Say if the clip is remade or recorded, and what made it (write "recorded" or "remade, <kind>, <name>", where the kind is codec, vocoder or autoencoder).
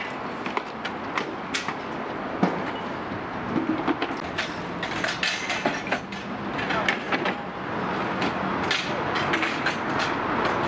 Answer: recorded